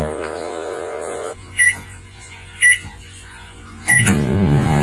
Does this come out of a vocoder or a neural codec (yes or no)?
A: yes